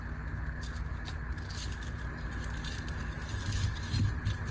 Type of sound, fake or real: real